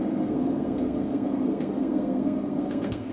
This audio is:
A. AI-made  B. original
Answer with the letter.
A